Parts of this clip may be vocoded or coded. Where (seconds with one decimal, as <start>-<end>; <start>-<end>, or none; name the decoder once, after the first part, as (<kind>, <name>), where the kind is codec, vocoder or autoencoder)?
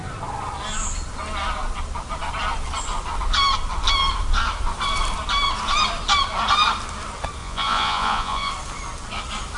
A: 7.4-8.5 (vocoder, Vocos)